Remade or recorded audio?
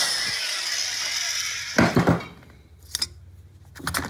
recorded